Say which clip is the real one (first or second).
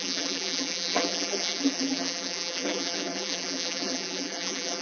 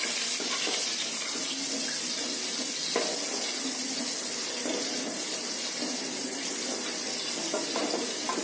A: second